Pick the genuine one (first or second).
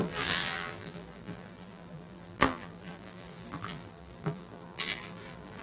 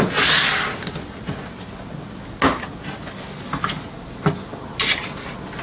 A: second